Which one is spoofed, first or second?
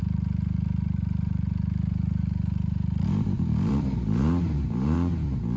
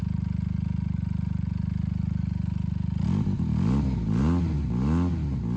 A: first